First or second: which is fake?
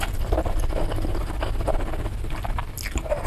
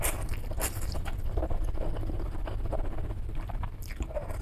second